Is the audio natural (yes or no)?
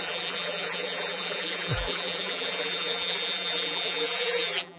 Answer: no